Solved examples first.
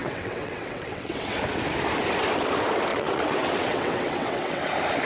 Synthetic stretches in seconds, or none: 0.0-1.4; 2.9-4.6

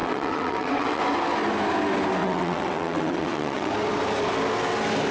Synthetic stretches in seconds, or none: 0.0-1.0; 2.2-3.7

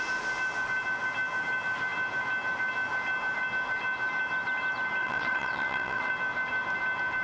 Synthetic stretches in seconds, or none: 5.0-6.1

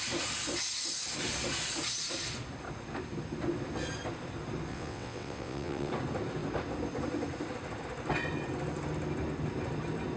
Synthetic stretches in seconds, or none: 4.7-5.9

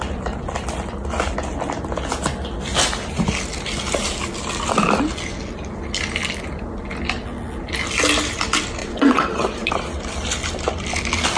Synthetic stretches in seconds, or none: 8.8-9.7

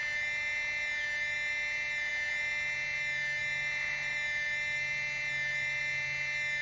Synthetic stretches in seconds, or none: none

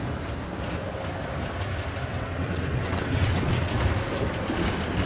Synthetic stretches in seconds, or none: 2.1-3.7

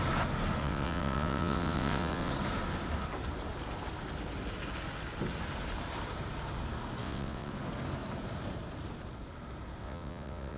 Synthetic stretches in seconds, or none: 0.6-2.3; 7.0-7.5; 9.8-10.6